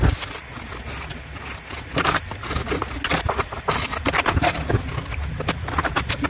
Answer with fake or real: real